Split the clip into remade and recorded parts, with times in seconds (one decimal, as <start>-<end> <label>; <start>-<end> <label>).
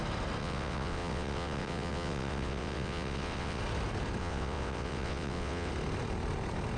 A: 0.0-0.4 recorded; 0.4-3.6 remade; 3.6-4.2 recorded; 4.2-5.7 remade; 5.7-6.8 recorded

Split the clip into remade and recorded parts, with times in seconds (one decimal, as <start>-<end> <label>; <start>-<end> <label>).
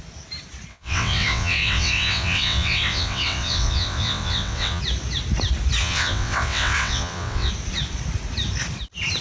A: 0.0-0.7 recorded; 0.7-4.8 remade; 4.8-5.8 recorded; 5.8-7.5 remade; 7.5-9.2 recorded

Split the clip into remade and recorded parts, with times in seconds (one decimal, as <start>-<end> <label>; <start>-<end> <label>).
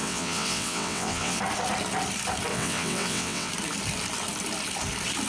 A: 0.0-1.4 remade; 1.4-2.5 recorded; 2.5-3.5 remade; 3.5-5.3 recorded